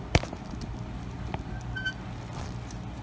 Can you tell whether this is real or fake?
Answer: real